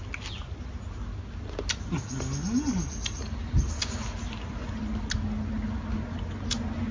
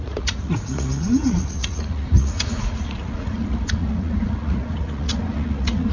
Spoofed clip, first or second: second